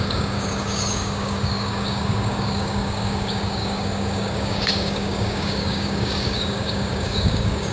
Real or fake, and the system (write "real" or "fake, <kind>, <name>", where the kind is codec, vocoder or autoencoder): fake, codec, DAC